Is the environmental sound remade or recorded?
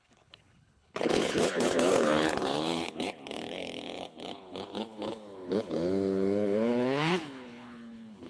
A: remade